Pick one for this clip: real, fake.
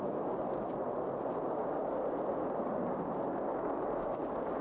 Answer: real